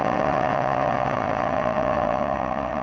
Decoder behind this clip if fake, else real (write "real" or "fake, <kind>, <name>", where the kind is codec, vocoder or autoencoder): fake, vocoder, WaveNeXt